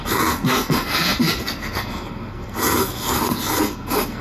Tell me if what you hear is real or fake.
fake